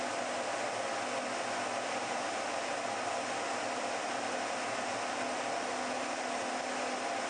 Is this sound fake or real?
real